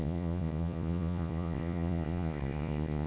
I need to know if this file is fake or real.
fake